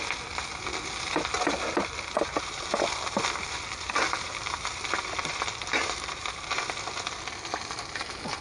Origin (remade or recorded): remade